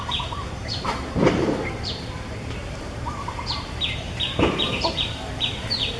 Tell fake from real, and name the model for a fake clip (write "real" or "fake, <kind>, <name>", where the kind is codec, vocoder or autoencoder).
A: fake, vocoder, BigVGAN v2